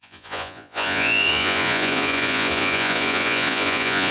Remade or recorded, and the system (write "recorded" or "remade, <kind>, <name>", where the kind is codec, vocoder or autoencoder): remade, vocoder, Vocos